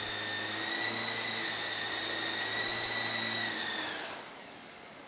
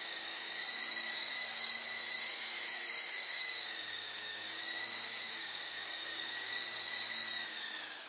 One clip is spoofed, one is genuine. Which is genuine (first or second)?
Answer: first